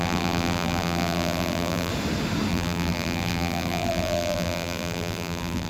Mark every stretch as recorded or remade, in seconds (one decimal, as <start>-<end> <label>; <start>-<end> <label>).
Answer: 0.0-1.9 remade; 1.9-2.5 recorded; 2.5-5.7 remade